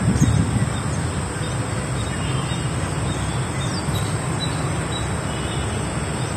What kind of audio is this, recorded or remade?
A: recorded